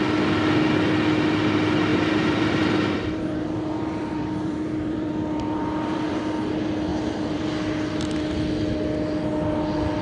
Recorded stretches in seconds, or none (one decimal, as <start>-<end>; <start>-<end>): 0.0-1.9; 6.2-6.9; 7.4-10.0